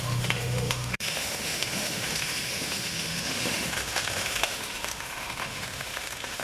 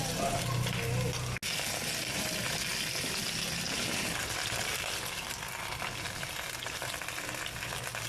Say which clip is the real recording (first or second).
second